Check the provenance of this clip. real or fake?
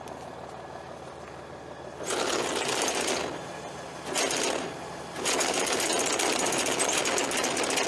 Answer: real